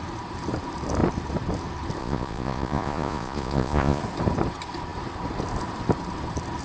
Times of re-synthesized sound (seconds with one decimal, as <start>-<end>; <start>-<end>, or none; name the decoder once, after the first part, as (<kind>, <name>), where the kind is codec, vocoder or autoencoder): 2.0-4.0 (vocoder, Vocos)